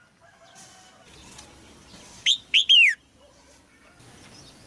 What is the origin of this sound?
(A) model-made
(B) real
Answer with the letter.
A